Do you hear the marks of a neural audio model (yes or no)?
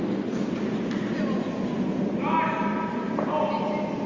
no